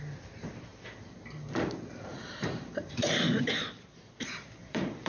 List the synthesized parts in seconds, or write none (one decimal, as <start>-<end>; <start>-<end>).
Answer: 2.1-5.1